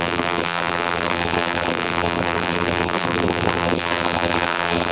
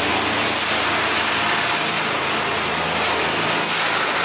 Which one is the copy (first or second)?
first